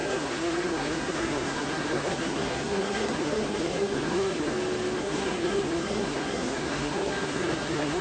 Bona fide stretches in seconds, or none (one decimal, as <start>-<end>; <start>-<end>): 4.5-5.0